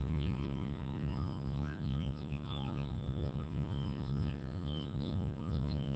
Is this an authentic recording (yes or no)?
no